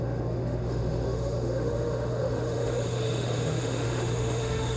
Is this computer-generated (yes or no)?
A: yes